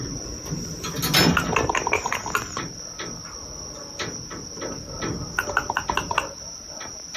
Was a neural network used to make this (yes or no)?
no